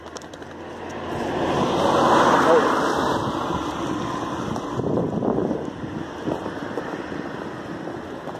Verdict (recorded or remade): recorded